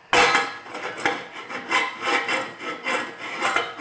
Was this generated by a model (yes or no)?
no